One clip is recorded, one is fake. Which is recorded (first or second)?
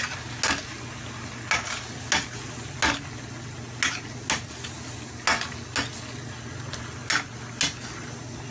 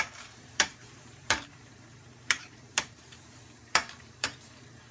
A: first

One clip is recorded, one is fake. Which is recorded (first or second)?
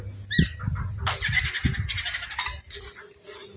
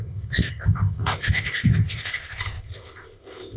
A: first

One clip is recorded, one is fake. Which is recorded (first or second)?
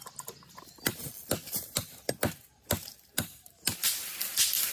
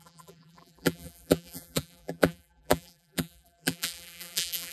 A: first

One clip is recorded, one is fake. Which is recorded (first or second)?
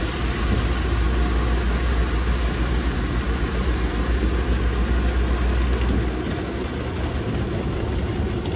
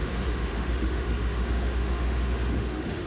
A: first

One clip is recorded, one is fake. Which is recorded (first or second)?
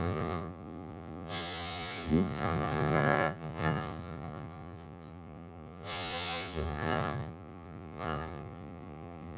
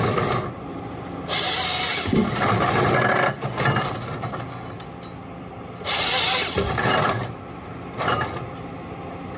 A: second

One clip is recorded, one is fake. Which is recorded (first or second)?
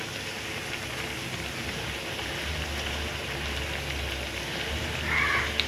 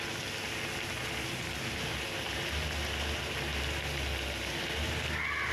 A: second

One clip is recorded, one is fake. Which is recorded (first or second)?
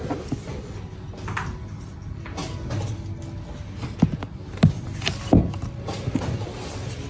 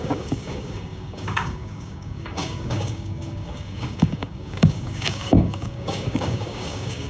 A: first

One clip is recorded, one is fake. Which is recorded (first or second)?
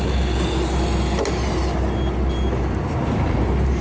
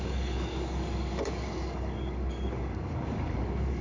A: first